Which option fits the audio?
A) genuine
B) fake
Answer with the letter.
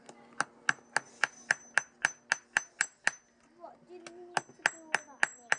A